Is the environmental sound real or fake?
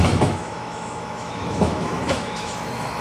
fake